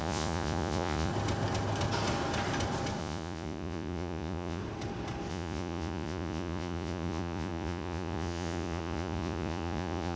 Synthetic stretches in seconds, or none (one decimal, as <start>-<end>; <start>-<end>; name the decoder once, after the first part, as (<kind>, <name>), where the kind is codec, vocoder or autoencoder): 0.0-1.1 (vocoder, Vocos); 3.0-4.6; 5.3-10.2